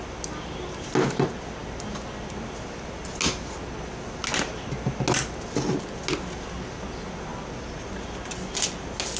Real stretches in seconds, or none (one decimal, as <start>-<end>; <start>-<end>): 0.0-9.2